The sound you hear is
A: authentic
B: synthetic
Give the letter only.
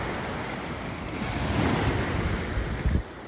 A